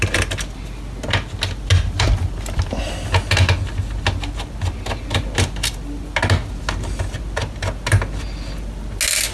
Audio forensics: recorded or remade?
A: recorded